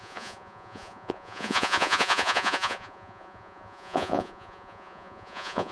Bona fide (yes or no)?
no